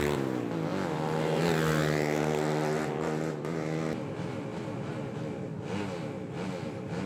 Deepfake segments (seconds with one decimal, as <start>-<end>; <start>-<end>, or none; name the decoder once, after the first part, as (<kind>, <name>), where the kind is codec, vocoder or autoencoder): none